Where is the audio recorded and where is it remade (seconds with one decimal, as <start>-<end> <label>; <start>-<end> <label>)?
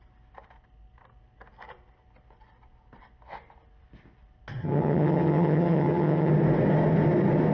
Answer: 0.0-4.6 recorded; 4.6-6.3 remade; 6.3-7.5 recorded